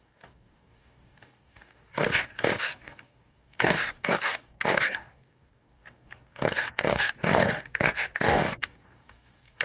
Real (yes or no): no